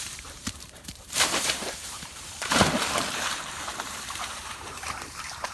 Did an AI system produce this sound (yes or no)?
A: yes